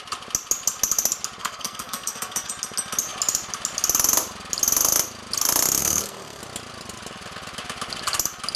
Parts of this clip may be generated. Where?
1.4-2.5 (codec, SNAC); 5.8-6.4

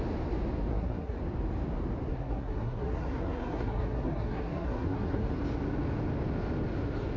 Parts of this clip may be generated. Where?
0.7-1.2 (codec, SNAC); 2.1-5.4

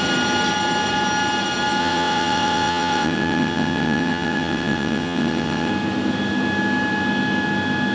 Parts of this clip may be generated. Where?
1.8-5.7 (vocoder, WaveNeXt)

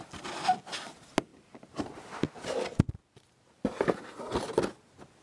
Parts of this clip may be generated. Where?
none

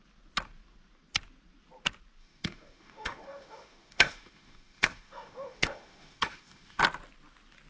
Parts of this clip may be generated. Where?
2.2-6.8 (autoencoder, DAC-VAE)

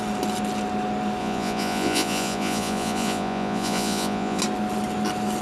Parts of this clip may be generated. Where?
1.2-4.4 (vocoder, Vocos)

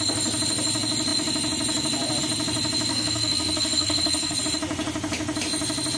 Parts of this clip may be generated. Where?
2.9-4.4 (codec, SNAC)